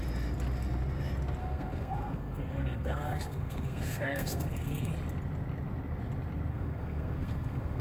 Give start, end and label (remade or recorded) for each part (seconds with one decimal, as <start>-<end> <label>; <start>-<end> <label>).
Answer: 0.0-1.4 recorded; 1.4-4.9 remade; 4.9-6.5 recorded; 6.5-7.8 remade